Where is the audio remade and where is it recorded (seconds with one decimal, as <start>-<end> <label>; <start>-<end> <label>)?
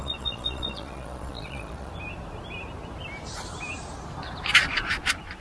0.0-1.9 remade; 1.9-5.4 recorded